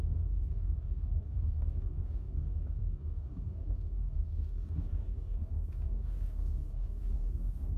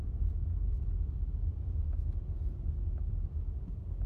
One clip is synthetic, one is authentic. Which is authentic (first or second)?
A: second